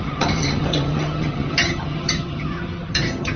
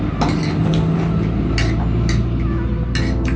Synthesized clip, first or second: first